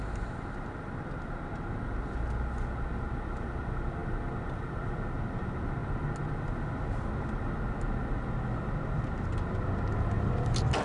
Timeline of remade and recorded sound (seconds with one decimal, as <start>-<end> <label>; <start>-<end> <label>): 0.0-10.8 recorded